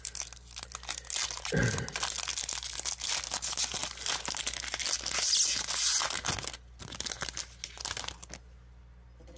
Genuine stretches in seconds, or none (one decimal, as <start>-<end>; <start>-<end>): 0.0-9.4